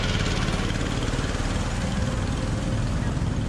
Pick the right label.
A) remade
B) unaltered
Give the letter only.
B